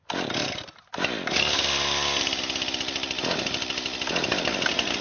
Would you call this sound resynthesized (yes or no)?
no